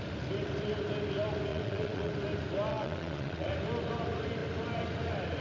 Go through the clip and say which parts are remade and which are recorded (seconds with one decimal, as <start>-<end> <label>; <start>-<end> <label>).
0.0-1.5 recorded; 1.5-2.1 remade; 2.1-2.7 recorded; 2.7-3.5 remade; 3.5-5.4 recorded